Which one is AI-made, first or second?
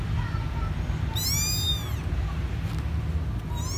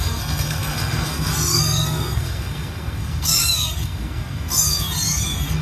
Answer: second